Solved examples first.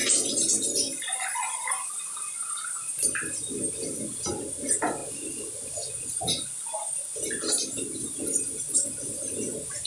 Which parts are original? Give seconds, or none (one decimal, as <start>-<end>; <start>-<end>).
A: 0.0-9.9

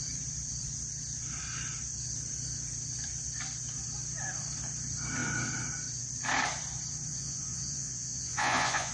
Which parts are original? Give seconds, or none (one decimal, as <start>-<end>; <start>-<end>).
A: 0.0-7.1

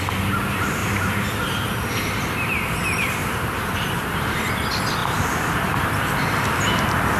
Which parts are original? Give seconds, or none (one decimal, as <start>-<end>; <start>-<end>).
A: 0.0-0.8; 1.9-3.2; 4.5-5.0; 6.0-7.2

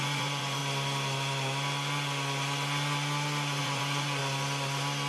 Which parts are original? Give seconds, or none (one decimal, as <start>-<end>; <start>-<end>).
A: 0.6-3.6; 4.2-5.1

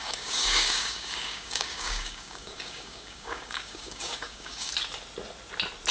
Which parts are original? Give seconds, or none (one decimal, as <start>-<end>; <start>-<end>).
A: 4.7-5.9

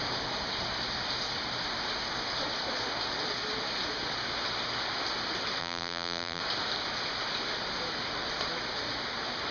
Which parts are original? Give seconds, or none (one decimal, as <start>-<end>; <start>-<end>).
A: 0.0-5.6; 6.4-9.5

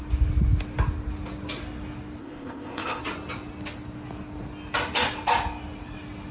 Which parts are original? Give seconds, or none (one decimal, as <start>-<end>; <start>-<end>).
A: 0.0-2.2; 3.0-6.3